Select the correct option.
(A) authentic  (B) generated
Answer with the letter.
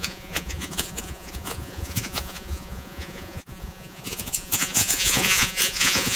B